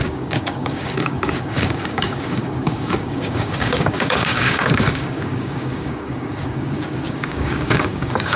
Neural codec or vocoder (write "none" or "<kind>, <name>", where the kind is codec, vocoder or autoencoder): codec, DAC